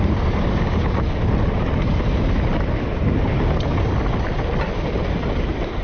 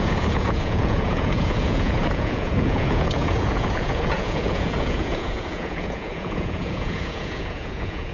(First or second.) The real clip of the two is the first